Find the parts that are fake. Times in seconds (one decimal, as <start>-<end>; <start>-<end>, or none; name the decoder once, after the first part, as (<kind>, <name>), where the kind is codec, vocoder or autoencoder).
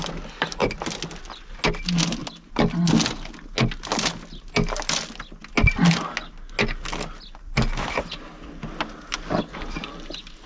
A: none